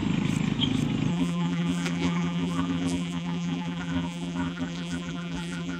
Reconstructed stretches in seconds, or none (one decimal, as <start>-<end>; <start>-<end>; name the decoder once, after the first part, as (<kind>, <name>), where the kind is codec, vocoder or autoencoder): 1.1-5.8 (vocoder, BigVGAN v2)